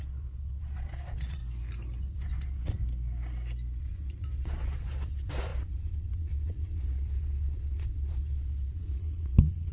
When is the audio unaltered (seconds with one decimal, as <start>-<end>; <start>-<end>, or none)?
1.4-2.0; 2.8-3.8